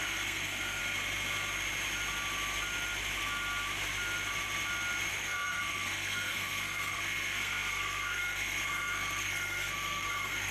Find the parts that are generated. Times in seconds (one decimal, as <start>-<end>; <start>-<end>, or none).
0.0-0.8; 5.1-10.5